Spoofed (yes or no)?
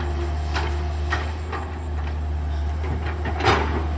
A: no